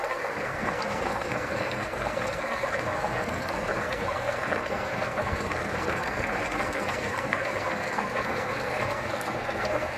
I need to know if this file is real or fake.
fake